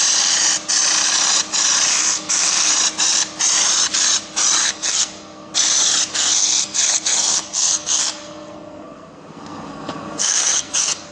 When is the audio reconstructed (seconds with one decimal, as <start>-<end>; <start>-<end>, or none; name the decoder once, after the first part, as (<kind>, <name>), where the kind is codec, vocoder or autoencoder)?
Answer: 1.9-2.7 (codec, SNAC); 4.6-5.5; 6.1-11.1